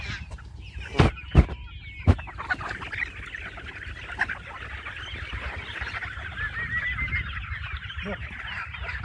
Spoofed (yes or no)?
no